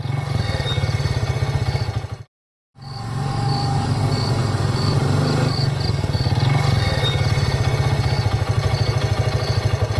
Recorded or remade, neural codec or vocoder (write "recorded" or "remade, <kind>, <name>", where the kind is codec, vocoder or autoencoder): recorded